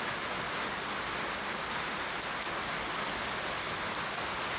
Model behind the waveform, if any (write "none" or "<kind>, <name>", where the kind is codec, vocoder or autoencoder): none